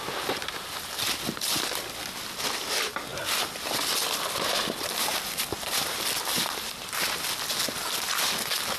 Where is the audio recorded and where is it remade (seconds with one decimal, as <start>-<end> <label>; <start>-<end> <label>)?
0.0-3.1 recorded; 3.1-7.2 remade; 7.2-8.8 recorded